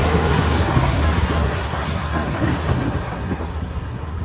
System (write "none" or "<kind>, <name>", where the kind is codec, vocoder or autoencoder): codec, SNAC